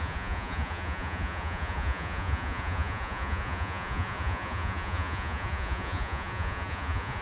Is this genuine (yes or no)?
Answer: no